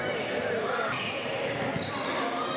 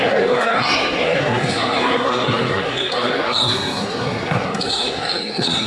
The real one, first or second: first